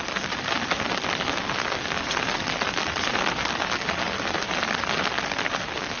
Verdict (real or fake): real